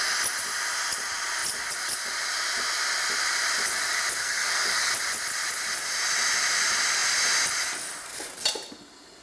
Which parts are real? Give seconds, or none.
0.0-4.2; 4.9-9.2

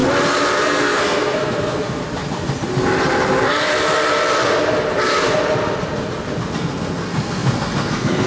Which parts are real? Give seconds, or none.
0.0-0.6; 2.0-6.5

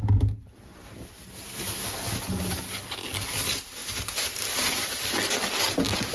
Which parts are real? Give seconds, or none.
0.0-6.1

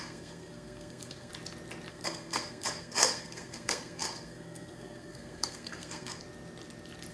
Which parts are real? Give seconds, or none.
1.3-1.9; 6.2-7.1

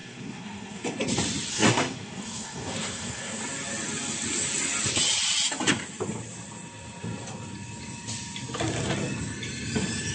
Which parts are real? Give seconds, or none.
1.0-1.5; 3.4-10.1

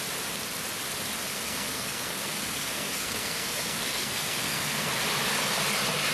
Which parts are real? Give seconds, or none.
0.0-1.3; 5.0-6.1